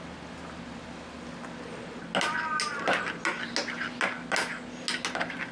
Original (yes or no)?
yes